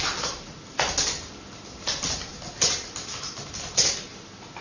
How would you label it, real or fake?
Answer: real